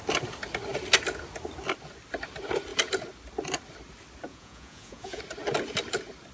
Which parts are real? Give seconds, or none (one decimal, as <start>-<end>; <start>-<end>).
0.0-4.3; 5.2-6.3

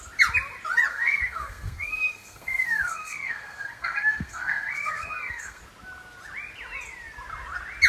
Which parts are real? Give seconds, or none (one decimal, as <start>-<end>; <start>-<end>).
0.0-0.9; 5.6-7.9

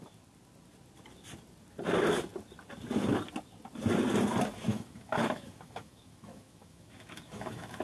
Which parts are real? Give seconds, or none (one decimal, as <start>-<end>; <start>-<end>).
0.0-4.7